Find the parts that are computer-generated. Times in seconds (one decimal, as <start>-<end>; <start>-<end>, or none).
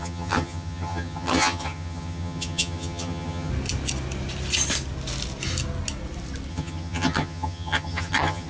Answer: 0.0-3.5; 6.5-8.5